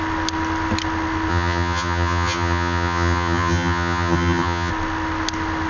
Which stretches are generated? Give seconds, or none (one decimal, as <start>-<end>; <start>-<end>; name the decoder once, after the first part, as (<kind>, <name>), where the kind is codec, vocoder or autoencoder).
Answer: 1.3-4.7 (vocoder, HiFi-GAN)